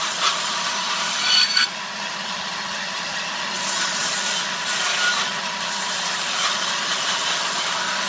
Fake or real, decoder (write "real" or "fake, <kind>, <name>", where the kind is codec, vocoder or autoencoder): real